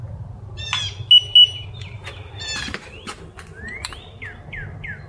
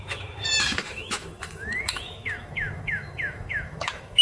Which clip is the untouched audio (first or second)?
first